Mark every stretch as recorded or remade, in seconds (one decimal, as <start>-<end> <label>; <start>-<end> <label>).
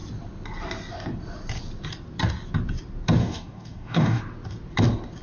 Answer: 0.0-3.2 recorded; 3.2-4.2 remade; 4.2-5.2 recorded